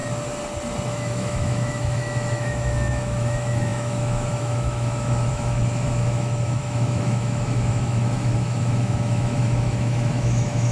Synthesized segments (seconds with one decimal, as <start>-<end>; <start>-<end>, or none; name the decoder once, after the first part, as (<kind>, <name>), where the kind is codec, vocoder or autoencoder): 0.9-10.7 (autoencoder, DAC-VAE)